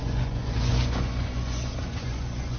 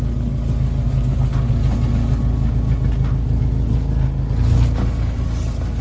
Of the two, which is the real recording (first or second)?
second